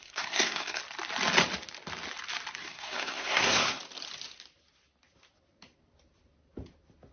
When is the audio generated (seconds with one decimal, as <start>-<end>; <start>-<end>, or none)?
0.0-0.8; 2.6-3.8